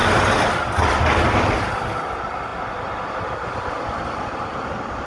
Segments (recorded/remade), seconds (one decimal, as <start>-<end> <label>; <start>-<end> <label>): 0.0-5.1 recorded